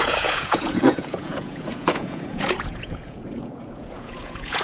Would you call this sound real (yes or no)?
no